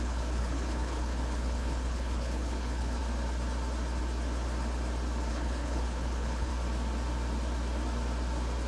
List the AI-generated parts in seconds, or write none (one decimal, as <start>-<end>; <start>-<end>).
0.0-3.0; 5.3-6.5